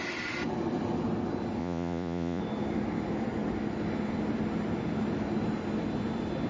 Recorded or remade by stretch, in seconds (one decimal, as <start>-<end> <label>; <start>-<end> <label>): 0.0-1.6 recorded; 1.6-2.4 remade; 2.4-6.5 recorded